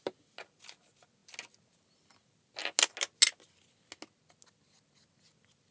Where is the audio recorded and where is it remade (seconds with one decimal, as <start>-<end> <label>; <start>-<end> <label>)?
0.0-5.7 recorded